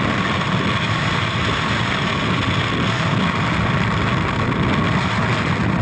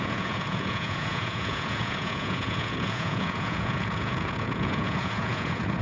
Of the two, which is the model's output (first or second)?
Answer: second